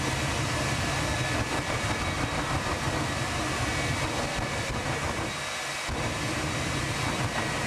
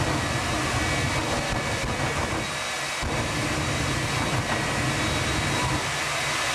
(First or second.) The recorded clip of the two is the second